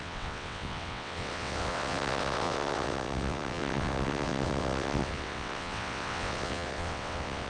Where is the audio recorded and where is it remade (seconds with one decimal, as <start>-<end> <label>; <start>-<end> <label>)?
0.0-7.5 remade